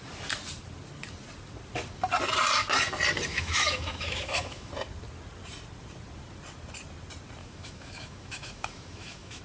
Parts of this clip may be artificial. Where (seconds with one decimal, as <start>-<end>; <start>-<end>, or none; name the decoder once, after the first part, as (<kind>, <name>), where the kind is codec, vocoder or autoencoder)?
3.3-4.7 (autoencoder, DAC-VAE); 7.4-9.4